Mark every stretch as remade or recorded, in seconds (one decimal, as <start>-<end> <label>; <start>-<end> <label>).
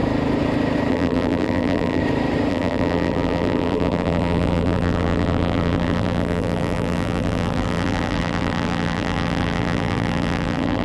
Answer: 0.0-0.9 recorded; 0.9-2.0 remade; 2.0-2.5 recorded; 2.5-10.8 remade